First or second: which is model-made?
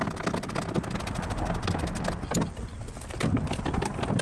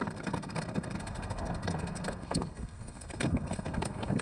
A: second